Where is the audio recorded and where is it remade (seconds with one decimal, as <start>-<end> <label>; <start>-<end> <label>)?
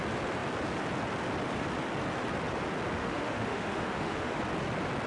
0.0-3.0 recorded; 3.0-4.4 remade; 4.4-5.1 recorded